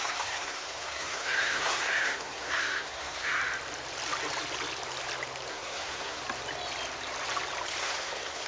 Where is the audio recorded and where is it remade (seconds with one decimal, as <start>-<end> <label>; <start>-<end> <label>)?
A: 0.0-3.4 remade; 3.4-5.5 recorded; 5.5-6.2 remade; 6.2-7.8 recorded; 7.8-8.5 remade